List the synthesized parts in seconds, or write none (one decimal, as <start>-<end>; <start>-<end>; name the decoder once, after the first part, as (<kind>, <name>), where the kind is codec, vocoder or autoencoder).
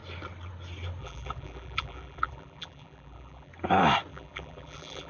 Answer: 1.0-3.5 (vocoder, BigVGAN v2); 4.1-5.1